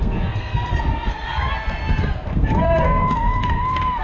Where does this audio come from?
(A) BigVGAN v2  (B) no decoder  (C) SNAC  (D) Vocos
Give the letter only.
C